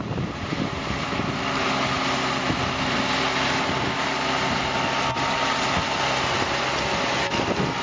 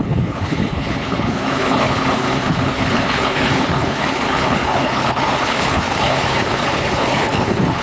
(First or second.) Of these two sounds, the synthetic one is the second